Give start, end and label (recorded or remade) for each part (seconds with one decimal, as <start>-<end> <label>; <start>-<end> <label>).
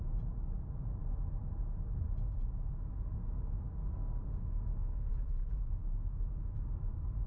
0.0-3.9 recorded; 3.9-4.6 remade; 4.6-7.3 recorded